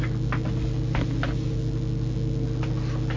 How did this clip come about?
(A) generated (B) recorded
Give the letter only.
B